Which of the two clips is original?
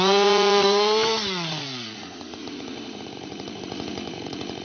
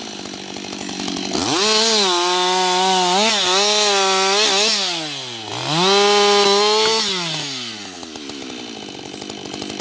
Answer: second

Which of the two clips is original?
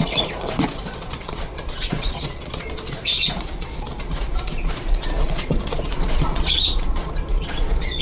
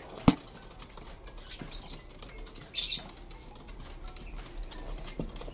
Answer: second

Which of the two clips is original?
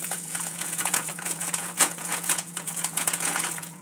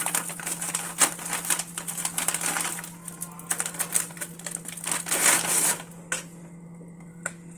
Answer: second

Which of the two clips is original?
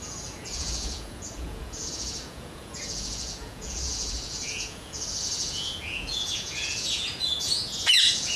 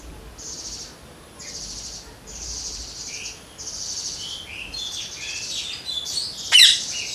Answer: second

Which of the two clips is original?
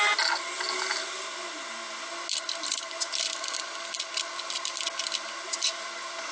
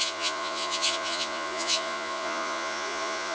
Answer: first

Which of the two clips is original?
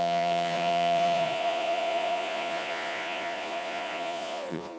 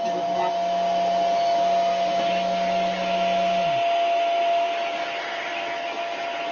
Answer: second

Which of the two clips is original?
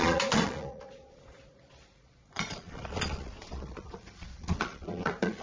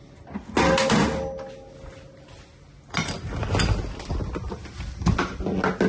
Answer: second